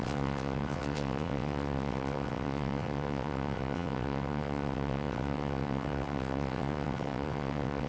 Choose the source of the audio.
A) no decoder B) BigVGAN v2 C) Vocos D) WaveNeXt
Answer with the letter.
D